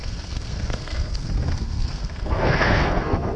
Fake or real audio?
fake